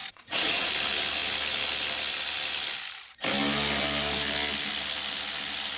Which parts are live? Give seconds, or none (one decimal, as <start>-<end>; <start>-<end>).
0.7-5.8